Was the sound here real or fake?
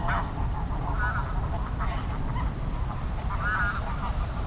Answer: real